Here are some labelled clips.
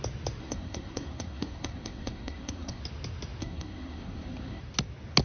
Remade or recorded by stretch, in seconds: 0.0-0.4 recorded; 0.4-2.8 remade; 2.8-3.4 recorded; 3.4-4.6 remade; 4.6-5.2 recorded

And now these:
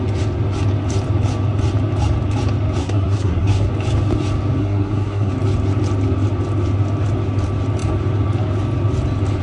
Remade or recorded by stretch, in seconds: 0.0-2.8 recorded; 2.8-3.7 remade; 3.7-4.6 recorded; 4.6-5.3 remade; 5.3-9.4 recorded

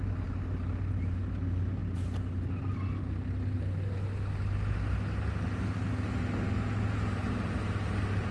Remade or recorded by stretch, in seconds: 0.0-8.3 recorded

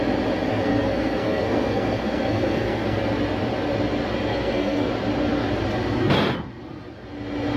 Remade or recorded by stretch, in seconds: 0.0-0.5 recorded; 0.5-3.0 remade; 3.0-4.3 recorded; 4.3-4.9 remade; 4.9-7.6 recorded

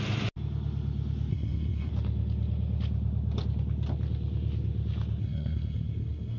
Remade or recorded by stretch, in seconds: 0.0-1.3 recorded; 1.3-1.9 remade; 1.9-5.2 recorded; 5.2-6.4 remade

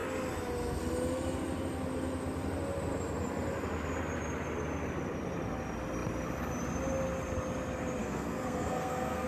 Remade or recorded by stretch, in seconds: 0.0-8.0 recorded; 8.0-9.3 remade

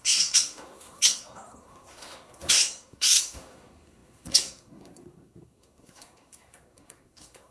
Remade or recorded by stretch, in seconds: 0.0-7.5 remade